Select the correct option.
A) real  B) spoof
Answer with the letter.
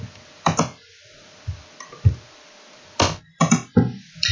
A